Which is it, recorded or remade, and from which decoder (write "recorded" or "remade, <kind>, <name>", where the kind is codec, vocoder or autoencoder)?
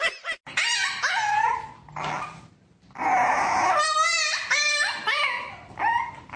recorded